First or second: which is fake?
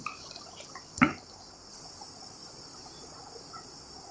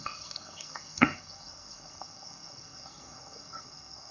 second